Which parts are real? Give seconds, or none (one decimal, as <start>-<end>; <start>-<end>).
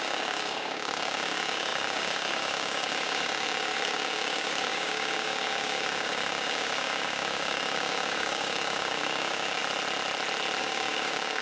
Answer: 9.6-10.6